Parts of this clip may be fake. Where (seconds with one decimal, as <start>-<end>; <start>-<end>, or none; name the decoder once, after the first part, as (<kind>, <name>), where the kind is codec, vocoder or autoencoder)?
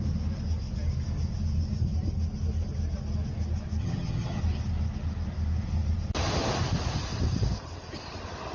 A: 3.8-4.4 (vocoder, HiFi-GAN)